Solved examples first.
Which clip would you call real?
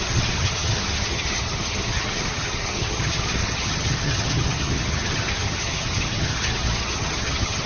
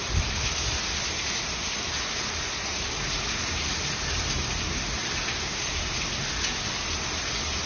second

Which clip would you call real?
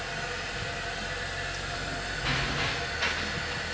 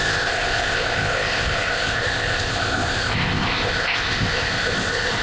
first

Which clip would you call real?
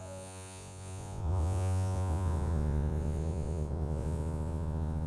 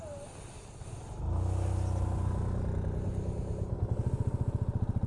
second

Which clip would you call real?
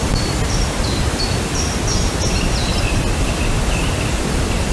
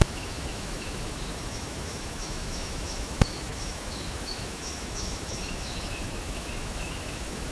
first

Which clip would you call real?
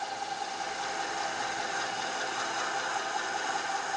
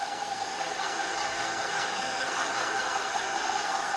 first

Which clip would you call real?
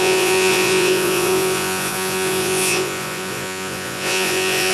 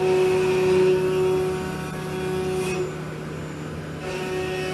second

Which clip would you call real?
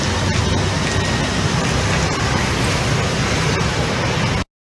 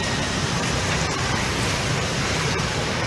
first